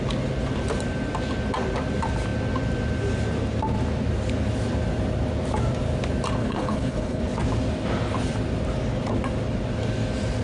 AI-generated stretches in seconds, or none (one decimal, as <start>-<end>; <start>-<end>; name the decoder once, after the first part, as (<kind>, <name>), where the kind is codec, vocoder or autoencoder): 6.4-7.2 (codec, HILCodec)